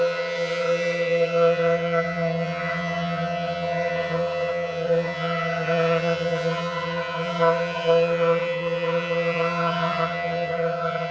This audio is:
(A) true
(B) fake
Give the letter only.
B